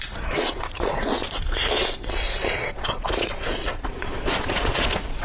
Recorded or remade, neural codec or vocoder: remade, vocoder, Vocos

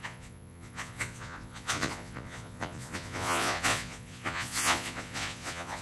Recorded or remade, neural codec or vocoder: remade, vocoder, Vocos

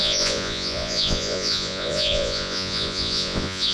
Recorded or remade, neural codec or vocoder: remade, vocoder, Vocos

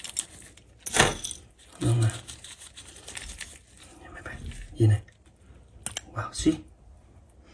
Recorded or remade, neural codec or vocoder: recorded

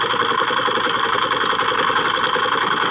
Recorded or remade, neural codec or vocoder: recorded